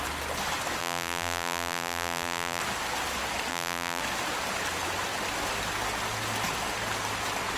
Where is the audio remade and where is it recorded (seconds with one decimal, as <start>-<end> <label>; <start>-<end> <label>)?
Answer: 0.0-0.8 recorded; 0.8-2.6 remade; 2.6-3.5 recorded; 3.5-4.0 remade; 4.0-7.6 recorded